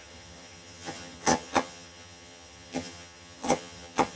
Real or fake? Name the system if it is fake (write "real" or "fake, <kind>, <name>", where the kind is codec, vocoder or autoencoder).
fake, vocoder, HiFi-GAN